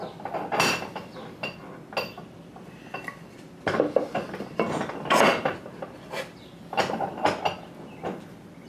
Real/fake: real